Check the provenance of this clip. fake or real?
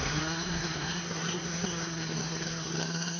fake